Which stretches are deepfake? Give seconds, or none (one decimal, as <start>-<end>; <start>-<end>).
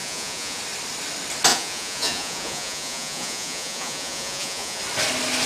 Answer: 0.0-0.6; 1.5-4.8